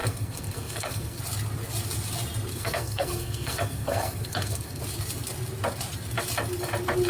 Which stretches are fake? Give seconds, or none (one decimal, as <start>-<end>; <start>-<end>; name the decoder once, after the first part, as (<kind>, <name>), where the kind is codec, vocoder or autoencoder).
0.0-1.2 (codec, SNAC); 2.5-4.8